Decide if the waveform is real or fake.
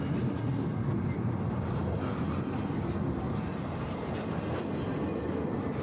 real